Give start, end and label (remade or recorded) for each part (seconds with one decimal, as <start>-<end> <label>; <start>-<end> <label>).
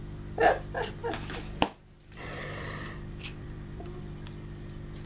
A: 0.0-1.0 recorded; 1.0-3.8 remade; 3.8-5.1 recorded